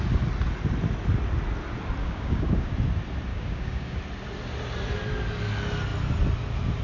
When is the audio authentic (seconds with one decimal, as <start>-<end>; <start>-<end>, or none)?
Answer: 0.0-2.0; 2.7-3.3; 4.0-6.8